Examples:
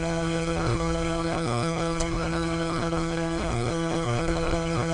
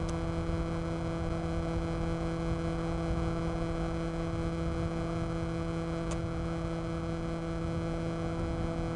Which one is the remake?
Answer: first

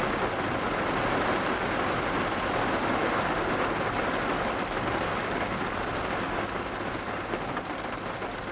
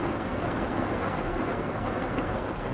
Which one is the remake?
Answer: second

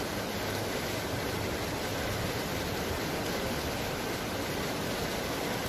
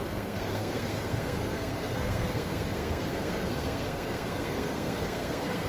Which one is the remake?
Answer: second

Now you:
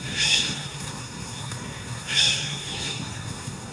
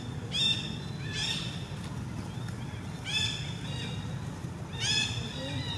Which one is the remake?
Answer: first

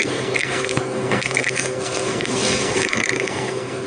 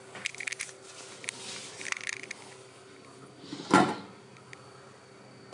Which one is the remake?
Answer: first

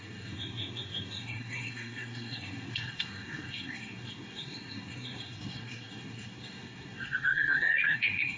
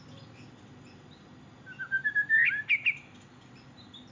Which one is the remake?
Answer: first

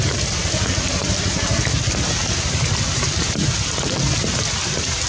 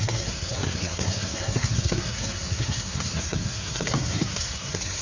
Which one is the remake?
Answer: second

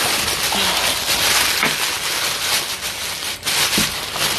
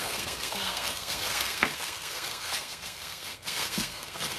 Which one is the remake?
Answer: second